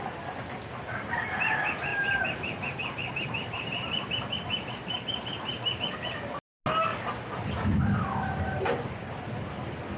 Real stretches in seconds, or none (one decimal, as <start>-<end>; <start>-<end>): 0.0-1.9; 5.8-10.0